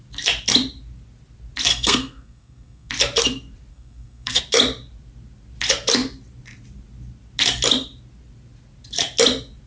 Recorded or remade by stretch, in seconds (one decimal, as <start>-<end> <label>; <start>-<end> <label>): 0.0-1.7 recorded; 1.7-2.9 remade; 2.9-3.7 recorded; 3.7-4.4 remade; 4.4-9.7 recorded